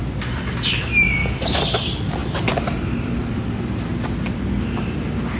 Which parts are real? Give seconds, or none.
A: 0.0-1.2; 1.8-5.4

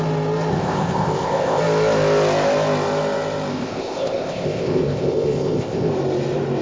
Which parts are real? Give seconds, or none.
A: 0.0-0.5; 1.6-3.5; 5.9-6.6

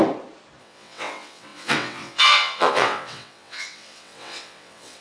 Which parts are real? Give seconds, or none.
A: 0.0-0.6

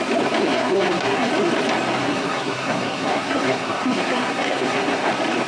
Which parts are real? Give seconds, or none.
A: 0.0-0.4; 1.3-2.0; 5.1-5.5